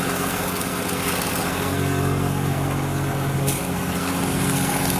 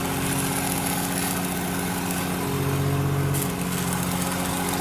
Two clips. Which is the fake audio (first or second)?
first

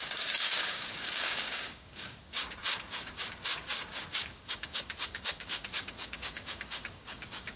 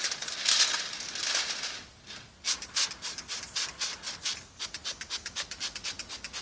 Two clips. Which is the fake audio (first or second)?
first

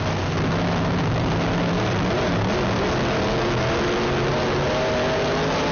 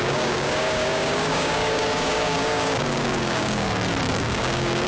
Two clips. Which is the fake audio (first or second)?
second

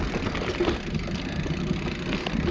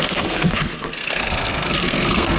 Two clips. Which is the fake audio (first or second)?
second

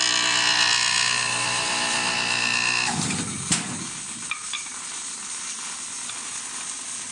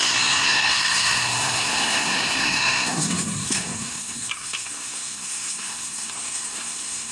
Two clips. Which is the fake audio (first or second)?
second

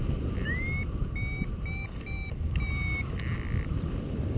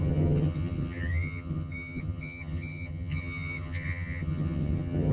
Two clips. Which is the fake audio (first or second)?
second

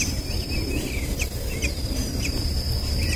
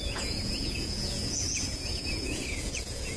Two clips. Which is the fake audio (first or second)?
second